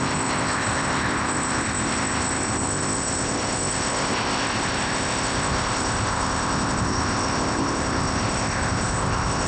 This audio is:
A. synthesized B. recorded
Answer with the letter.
A